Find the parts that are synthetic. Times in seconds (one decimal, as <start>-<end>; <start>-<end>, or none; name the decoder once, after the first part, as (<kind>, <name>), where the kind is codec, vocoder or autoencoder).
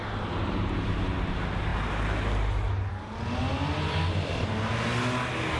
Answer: none